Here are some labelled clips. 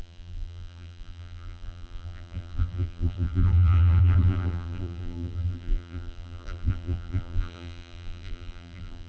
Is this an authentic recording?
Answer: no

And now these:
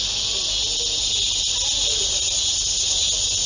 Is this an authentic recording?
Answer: yes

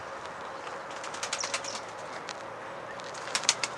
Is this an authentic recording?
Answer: yes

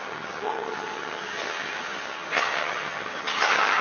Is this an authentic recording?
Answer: no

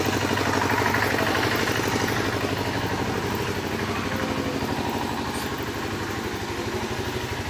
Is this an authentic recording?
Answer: yes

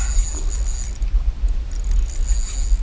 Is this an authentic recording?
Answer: yes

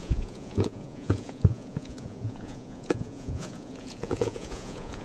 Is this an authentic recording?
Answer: no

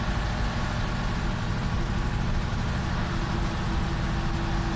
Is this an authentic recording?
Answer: yes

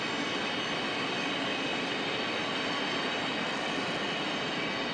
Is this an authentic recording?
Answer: yes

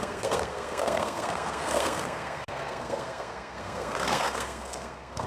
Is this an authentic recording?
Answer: no